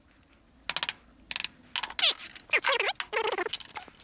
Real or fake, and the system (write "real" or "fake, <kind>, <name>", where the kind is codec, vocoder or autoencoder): real